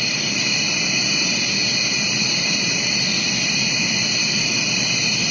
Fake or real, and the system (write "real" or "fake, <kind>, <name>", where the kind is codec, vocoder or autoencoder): real